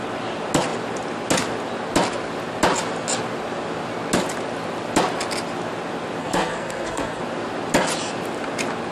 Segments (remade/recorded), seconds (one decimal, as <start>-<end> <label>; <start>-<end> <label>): 0.0-6.2 recorded; 6.2-7.2 remade; 7.2-8.9 recorded